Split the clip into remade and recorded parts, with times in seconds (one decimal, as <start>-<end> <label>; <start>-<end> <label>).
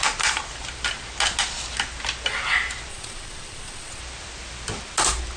0.0-2.9 recorded; 2.9-4.0 remade; 4.0-5.4 recorded